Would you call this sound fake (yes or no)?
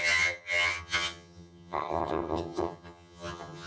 yes